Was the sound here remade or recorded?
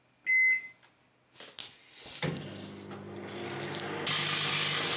recorded